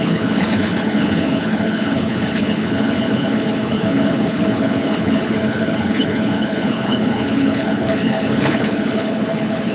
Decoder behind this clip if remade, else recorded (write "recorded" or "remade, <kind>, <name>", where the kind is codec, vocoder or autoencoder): remade, codec, HILCodec